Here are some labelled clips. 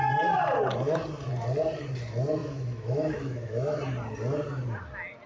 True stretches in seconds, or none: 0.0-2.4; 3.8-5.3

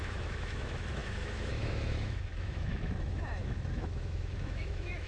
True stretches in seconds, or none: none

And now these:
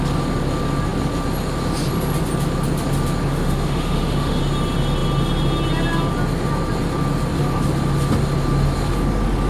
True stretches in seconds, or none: 0.0-3.3; 4.4-9.5

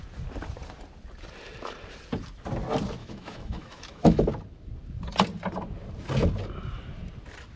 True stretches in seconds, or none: 0.0-3.0; 4.3-7.6

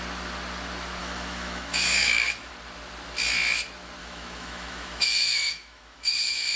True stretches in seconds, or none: 0.0-1.0; 2.5-4.0

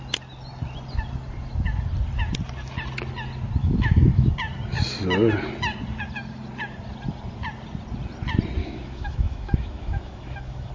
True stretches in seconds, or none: 0.0-3.6; 4.3-8.6

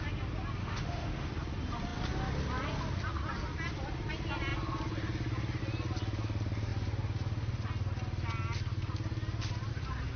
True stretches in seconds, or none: 0.0-0.6; 1.3-10.2

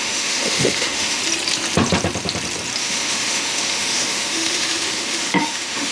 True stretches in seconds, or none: 1.2-2.8